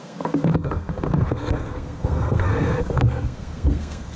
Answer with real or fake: fake